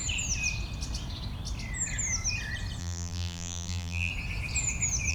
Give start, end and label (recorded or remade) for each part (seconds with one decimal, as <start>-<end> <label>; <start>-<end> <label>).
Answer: 0.0-2.8 recorded; 2.8-4.1 remade; 4.1-5.1 recorded